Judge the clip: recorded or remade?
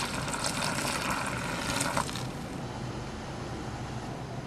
recorded